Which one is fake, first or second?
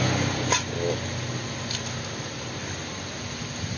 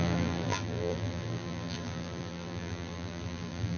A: second